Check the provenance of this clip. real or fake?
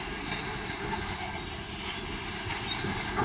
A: real